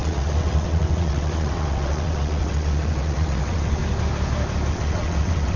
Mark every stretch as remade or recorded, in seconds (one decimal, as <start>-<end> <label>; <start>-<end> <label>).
0.0-3.8 remade; 3.8-4.7 recorded; 4.7-5.6 remade